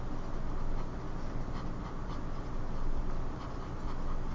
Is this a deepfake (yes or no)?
no